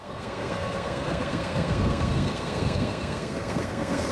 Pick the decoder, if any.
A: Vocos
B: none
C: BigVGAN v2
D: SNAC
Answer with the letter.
D